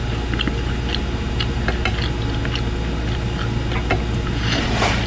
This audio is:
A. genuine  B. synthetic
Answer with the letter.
A